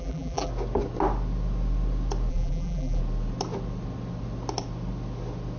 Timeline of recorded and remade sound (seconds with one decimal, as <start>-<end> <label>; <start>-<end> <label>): 0.0-0.5 remade; 0.5-2.3 recorded; 2.3-3.0 remade; 3.0-5.6 recorded